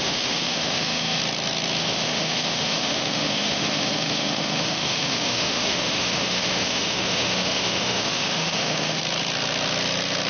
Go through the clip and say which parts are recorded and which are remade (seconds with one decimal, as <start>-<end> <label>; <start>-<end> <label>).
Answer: 0.0-1.2 remade; 1.2-1.8 recorded; 1.8-9.0 remade; 9.0-10.3 recorded